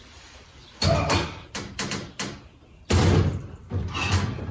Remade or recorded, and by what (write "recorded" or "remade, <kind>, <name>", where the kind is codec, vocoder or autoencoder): remade, vocoder, BigVGAN v2